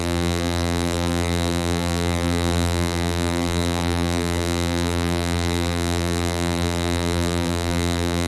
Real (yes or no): no